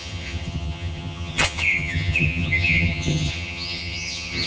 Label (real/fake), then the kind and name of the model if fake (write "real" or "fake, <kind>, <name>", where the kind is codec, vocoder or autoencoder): fake, vocoder, HiFi-GAN